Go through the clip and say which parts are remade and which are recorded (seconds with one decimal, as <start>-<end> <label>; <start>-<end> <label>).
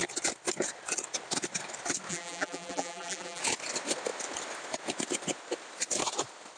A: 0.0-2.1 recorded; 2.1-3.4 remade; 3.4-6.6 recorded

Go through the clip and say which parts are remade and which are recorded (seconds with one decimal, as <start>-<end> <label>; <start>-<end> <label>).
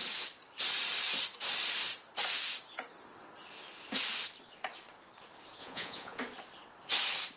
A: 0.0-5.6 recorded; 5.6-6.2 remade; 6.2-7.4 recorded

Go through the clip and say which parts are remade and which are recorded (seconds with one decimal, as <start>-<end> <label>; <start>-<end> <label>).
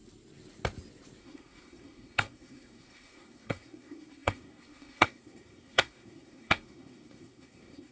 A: 0.0-1.2 recorded; 1.2-7.9 remade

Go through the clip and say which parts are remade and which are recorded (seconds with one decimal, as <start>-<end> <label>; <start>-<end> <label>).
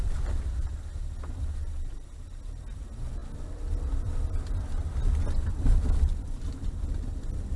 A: 0.0-7.6 recorded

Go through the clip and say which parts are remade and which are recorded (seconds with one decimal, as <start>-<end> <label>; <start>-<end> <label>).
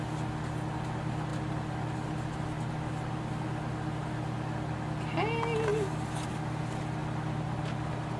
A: 0.0-8.2 recorded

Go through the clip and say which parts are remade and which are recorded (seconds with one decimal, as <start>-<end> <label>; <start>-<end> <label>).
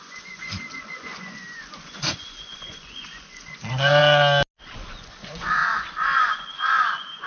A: 0.0-4.0 remade; 4.0-4.6 recorded; 4.6-7.3 remade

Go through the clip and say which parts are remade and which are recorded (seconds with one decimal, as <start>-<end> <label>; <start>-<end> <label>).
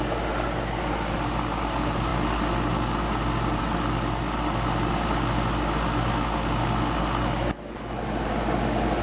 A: 0.0-9.0 recorded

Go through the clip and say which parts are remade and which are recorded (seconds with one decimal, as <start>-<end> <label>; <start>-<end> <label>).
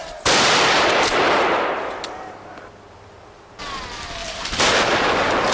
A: 0.0-1.7 remade; 1.7-4.2 recorded; 4.2-4.7 remade; 4.7-5.5 recorded